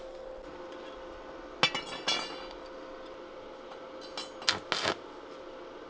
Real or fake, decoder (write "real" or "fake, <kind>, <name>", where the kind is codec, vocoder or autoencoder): real